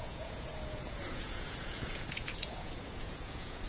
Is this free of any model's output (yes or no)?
no